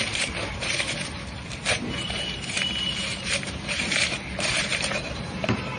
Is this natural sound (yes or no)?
no